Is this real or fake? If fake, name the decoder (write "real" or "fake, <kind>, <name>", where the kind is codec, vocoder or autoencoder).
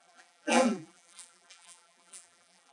fake, vocoder, BigVGAN v2